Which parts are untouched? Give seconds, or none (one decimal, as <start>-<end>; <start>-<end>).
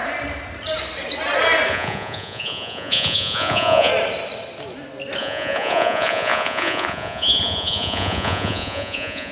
0.0-1.7; 3.9-5.2